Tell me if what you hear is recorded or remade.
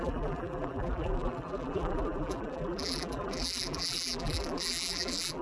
remade